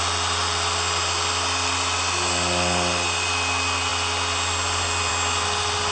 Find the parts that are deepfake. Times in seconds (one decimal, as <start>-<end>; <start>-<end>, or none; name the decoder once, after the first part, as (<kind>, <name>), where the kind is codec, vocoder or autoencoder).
none